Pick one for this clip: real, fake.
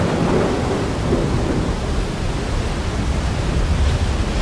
real